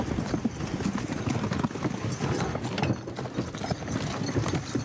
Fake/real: real